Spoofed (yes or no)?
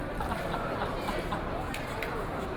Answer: no